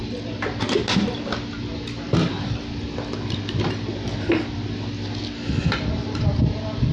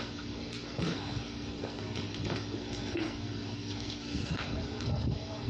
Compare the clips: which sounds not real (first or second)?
second